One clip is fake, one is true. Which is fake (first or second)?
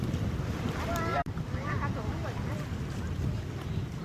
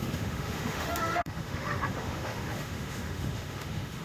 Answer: second